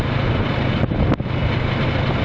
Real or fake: real